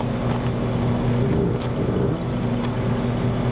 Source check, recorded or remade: recorded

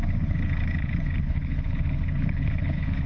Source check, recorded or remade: remade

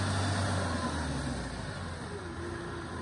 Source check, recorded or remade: recorded